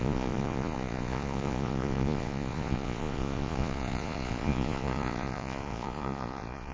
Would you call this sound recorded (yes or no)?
no